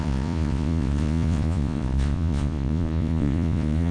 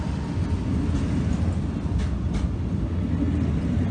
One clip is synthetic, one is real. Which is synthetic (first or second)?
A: first